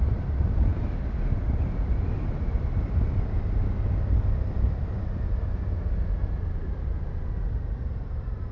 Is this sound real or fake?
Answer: real